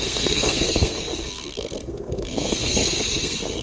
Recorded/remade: remade